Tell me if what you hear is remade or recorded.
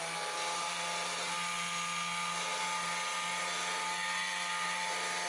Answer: recorded